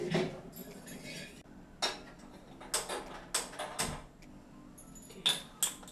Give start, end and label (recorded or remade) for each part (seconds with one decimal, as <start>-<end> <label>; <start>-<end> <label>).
0.0-5.9 recorded